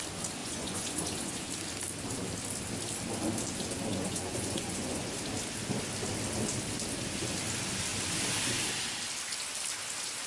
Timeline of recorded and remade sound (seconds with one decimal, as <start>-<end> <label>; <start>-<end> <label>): 0.0-0.4 recorded; 0.4-1.5 remade; 1.5-3.9 recorded; 3.9-5.1 remade; 5.1-10.3 recorded